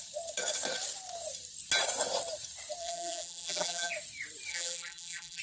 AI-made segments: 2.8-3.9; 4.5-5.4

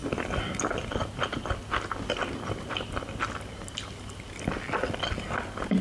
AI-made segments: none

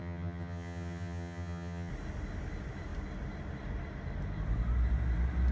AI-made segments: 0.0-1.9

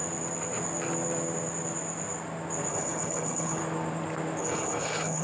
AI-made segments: 2.7-3.6; 4.4-5.2